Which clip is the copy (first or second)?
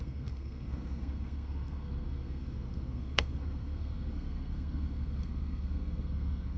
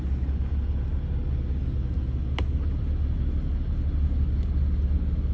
first